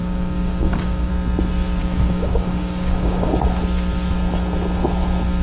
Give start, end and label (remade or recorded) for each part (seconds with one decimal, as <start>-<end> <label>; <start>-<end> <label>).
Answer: 0.0-1.1 remade; 1.1-1.8 recorded; 1.8-3.3 remade; 3.3-5.4 recorded